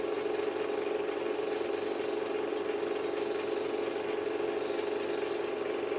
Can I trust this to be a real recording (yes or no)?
yes